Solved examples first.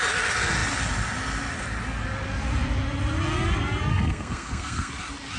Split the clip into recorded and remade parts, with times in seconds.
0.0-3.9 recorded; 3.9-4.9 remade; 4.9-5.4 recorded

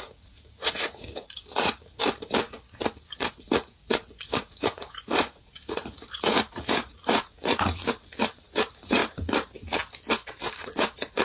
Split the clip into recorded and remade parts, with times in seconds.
0.0-2.0 remade; 2.0-3.2 recorded; 3.2-9.0 remade; 9.0-10.5 recorded; 10.5-11.2 remade

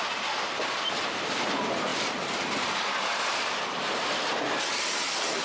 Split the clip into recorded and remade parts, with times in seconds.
0.0-1.9 recorded; 1.9-4.6 remade; 4.6-5.4 recorded

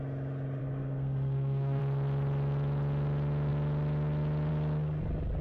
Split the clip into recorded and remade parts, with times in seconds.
0.0-0.6 recorded; 0.6-1.8 remade; 1.8-5.4 recorded